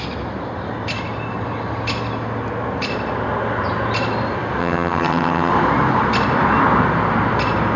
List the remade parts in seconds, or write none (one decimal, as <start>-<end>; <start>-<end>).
4.6-5.5